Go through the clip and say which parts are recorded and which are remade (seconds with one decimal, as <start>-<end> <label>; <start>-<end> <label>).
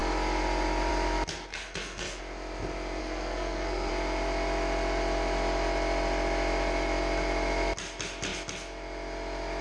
0.0-1.5 recorded; 1.5-2.2 remade; 2.2-3.0 recorded; 3.0-3.9 remade; 3.9-9.6 recorded